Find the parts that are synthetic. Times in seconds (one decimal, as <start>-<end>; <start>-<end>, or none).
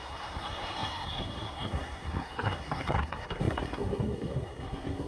0.0-5.1